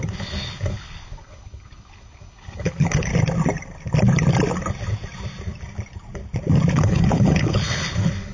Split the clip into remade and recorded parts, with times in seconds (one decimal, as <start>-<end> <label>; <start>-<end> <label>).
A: 0.0-3.1 remade; 3.1-6.7 recorded; 6.7-8.3 remade